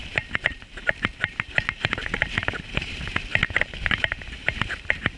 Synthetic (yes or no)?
no